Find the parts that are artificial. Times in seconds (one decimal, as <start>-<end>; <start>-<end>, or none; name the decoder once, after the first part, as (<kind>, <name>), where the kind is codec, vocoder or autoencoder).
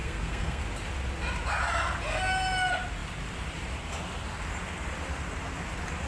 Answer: 0.0-0.6 (codec, SNAC)